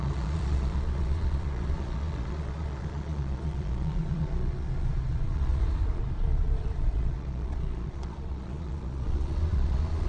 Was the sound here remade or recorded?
remade